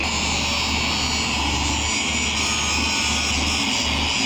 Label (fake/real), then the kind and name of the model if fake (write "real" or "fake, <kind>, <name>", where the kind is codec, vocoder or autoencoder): real